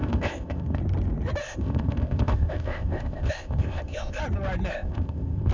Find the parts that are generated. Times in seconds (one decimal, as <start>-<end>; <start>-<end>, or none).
0.0-0.8; 1.4-4.2; 4.7-5.5